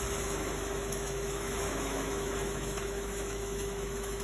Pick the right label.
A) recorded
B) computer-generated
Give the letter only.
B